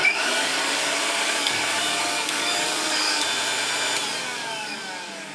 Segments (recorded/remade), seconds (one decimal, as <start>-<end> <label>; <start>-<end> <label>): 0.0-3.2 remade; 3.2-4.2 recorded; 4.2-5.3 remade